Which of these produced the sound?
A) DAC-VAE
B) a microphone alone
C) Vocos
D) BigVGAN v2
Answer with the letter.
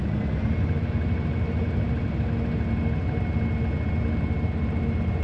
B